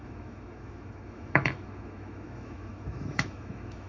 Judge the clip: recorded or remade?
remade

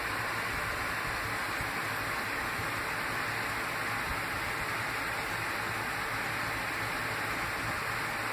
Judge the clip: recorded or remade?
recorded